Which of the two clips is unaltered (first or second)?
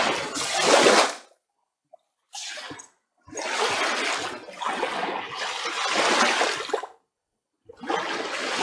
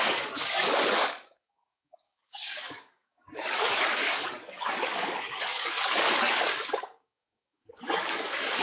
first